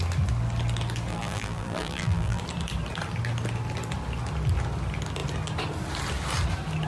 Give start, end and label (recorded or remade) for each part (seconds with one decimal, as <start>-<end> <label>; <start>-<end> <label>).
0.0-1.1 recorded; 1.1-2.4 remade; 2.4-6.9 recorded